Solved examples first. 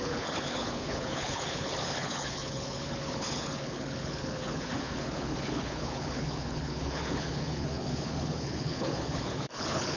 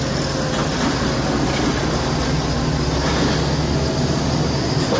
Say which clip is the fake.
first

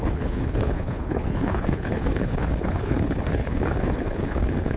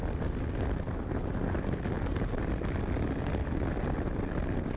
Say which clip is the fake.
first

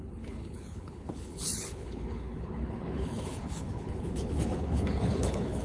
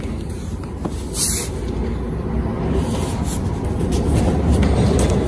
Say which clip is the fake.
first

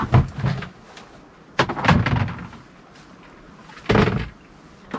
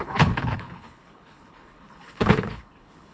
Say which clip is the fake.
second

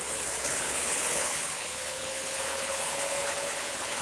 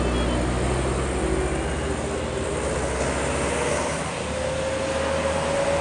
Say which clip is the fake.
first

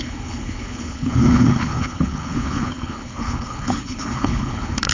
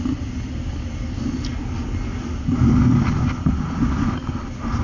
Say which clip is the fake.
first